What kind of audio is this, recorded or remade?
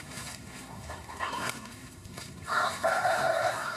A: remade